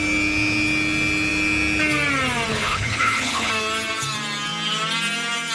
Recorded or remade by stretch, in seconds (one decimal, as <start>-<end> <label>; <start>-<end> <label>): 0.0-2.5 recorded; 2.5-3.5 remade; 3.5-5.5 recorded